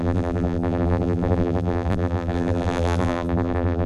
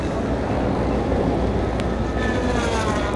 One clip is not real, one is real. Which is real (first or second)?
second